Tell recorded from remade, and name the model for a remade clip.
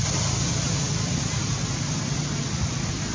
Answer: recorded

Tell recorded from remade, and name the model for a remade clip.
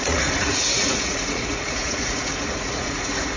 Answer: remade, vocoder, Vocos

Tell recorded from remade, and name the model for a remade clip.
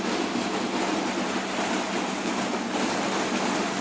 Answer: recorded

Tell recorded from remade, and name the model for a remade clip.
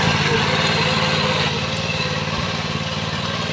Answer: recorded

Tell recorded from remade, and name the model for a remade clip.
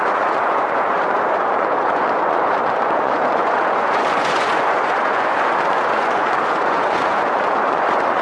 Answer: remade, vocoder, Vocos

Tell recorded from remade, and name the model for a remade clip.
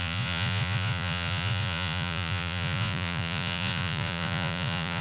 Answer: remade, vocoder, Vocos